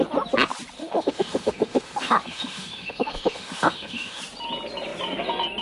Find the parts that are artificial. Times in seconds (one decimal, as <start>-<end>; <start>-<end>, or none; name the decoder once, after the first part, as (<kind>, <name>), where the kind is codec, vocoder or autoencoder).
0.8-4.2 (autoencoder, DAC-VAE)